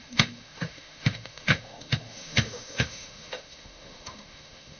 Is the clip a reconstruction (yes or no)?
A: yes